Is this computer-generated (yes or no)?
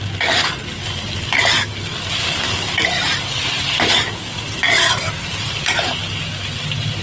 no